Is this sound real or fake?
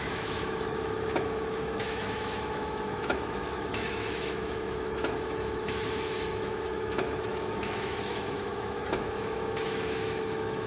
fake